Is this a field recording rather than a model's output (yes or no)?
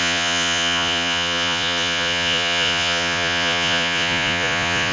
no